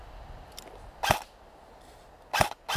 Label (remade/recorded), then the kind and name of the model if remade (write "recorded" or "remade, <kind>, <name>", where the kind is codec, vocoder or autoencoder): recorded